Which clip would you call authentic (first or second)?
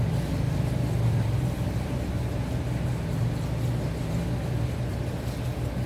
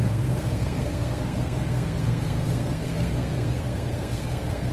first